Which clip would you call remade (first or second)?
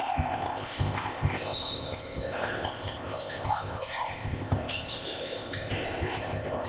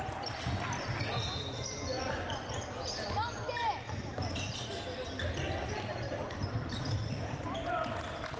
first